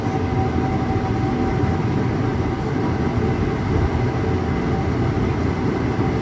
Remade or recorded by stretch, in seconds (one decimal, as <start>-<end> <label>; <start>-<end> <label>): 0.0-6.2 recorded